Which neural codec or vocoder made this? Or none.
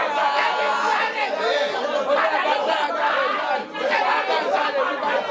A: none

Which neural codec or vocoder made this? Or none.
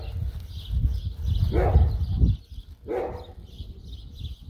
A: none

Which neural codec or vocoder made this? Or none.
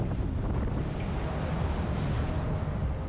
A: none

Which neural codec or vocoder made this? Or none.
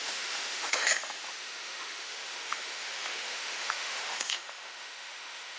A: autoencoder, DAC-VAE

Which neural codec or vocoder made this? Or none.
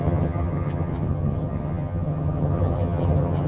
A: vocoder, HiFi-GAN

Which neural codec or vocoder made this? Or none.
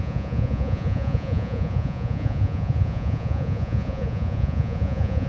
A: vocoder, Vocos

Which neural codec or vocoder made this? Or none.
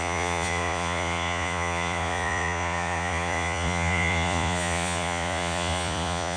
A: vocoder, Vocos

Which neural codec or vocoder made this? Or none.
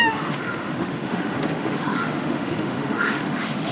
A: autoencoder, DAC-VAE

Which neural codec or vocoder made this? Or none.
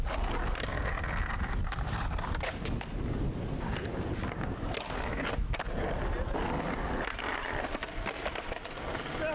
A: none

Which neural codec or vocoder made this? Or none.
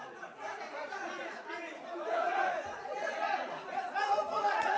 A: vocoder, Vocos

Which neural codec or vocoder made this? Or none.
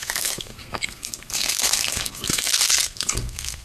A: codec, SNAC